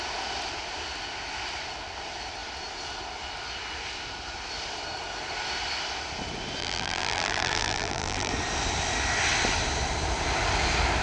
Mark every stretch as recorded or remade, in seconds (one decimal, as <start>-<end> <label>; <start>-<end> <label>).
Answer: 0.0-6.6 recorded; 6.6-8.3 remade; 8.3-11.0 recorded